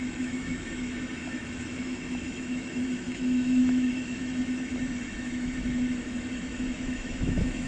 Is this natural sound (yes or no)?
no